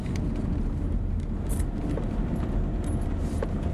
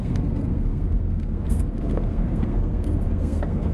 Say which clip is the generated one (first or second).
second